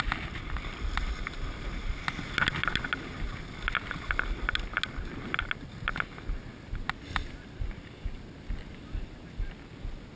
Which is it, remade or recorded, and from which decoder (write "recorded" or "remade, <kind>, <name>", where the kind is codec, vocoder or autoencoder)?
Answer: recorded